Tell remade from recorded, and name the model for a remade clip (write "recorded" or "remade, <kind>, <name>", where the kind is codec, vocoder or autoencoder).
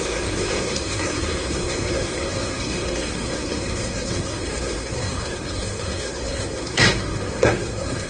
remade, codec, SNAC